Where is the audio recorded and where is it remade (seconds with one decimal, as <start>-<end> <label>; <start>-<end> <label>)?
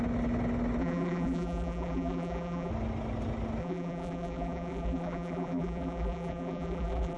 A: 0.0-0.8 recorded; 0.8-2.7 remade; 2.7-3.6 recorded; 3.6-7.2 remade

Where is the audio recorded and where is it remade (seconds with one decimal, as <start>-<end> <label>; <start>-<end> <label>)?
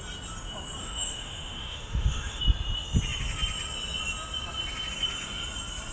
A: 0.0-0.8 recorded; 0.8-2.4 remade; 2.4-5.9 recorded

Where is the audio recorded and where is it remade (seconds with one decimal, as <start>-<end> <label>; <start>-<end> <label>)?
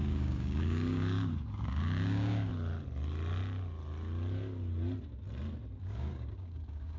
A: 0.0-2.5 remade; 2.5-5.8 recorded; 5.8-7.0 remade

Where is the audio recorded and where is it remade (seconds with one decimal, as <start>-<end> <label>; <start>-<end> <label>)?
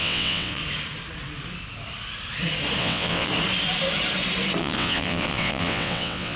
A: 0.0-0.6 remade; 0.6-2.8 recorded; 2.8-3.3 remade; 3.3-4.6 recorded; 4.6-6.4 remade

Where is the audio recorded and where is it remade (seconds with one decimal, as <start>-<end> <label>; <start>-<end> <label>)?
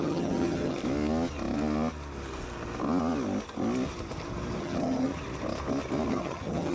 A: 0.0-0.8 remade; 0.8-4.6 recorded; 4.6-5.1 remade; 5.1-6.1 recorded; 6.1-6.7 remade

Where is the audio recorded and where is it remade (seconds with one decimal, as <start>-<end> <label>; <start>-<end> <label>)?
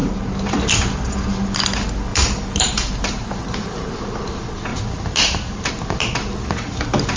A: 0.0-0.6 remade; 0.6-2.1 recorded; 2.1-4.1 remade; 4.1-4.7 recorded; 4.7-5.7 remade; 5.7-7.2 recorded